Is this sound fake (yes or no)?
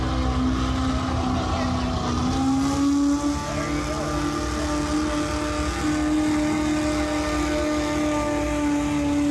no